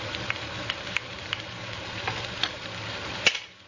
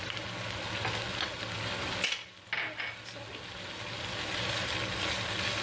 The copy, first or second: first